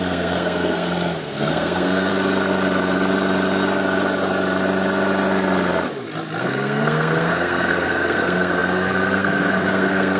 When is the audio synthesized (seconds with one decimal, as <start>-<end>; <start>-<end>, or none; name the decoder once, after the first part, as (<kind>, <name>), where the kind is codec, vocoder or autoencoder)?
0.0-2.1 (codec, SNAC); 6.4-10.2